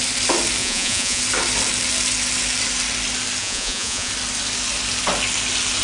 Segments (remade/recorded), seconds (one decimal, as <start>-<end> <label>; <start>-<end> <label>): 0.0-0.6 recorded; 0.6-1.2 remade; 1.2-3.4 recorded; 3.4-4.1 remade; 4.1-5.8 recorded